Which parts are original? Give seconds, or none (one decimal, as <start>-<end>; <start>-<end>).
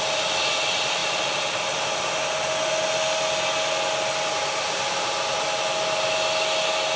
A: 0.0-7.0